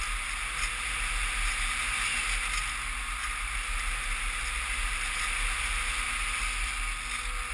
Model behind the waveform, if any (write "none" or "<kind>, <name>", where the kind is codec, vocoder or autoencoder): none